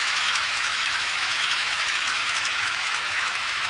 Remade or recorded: remade